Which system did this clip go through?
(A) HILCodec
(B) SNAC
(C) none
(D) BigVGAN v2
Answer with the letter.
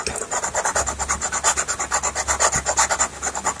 C